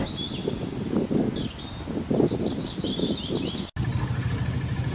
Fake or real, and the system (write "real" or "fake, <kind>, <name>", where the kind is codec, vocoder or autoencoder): real